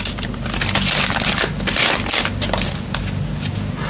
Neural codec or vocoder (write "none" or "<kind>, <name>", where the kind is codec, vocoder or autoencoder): none